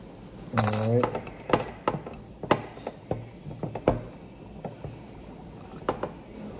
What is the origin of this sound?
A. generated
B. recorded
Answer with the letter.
B